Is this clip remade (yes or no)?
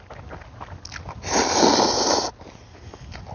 no